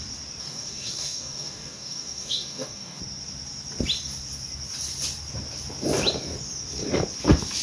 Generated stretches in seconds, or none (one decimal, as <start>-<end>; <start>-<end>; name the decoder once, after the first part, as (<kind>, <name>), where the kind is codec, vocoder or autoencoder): 0.4-3.0 (codec, DAC)